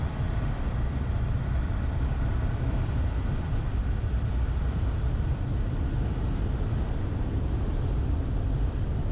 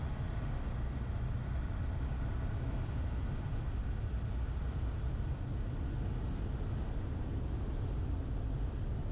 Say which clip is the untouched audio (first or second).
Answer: second